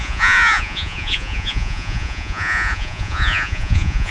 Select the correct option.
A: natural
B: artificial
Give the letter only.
B